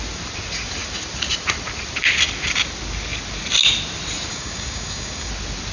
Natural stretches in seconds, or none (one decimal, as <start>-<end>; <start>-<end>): 0.0-4.3; 5.3-5.7